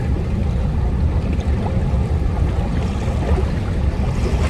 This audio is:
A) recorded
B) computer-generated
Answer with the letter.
A